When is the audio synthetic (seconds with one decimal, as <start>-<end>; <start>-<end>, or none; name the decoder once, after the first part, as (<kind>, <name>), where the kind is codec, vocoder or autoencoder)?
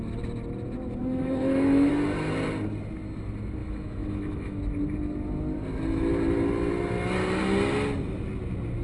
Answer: 1.0-1.9 (autoencoder, DAC-VAE); 3.6-4.6